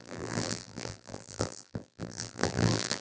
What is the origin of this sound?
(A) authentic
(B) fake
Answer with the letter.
B